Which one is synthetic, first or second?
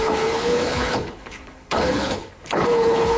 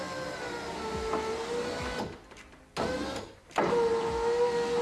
first